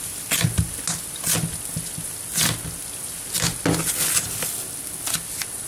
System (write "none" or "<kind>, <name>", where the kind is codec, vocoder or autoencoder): none